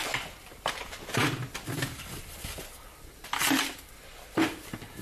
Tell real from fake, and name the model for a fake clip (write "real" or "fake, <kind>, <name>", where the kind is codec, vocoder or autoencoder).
fake, vocoder, BigVGAN v2